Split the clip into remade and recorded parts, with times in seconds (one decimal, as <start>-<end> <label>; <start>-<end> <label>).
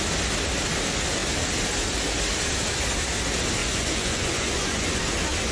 0.0-3.6 recorded; 3.6-5.0 remade; 5.0-5.5 recorded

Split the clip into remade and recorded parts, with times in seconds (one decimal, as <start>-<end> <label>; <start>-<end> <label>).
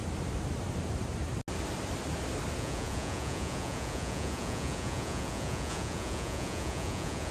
0.0-2.6 recorded; 2.6-7.3 remade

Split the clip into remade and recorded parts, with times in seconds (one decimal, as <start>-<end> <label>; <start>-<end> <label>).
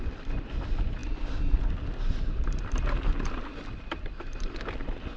0.0-5.2 recorded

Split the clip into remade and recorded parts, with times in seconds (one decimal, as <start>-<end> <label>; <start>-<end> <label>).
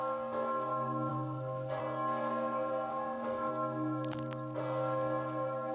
0.0-1.1 recorded; 1.1-1.8 remade; 1.8-2.9 recorded; 2.9-3.5 remade; 3.5-5.7 recorded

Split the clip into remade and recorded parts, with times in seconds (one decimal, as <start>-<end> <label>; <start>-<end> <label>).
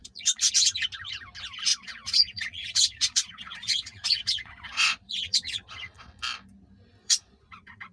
0.0-0.5 remade; 0.5-1.7 recorded; 1.7-6.1 remade; 6.1-7.0 recorded; 7.0-7.9 remade